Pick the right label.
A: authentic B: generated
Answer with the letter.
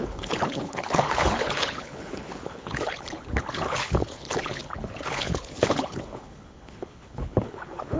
B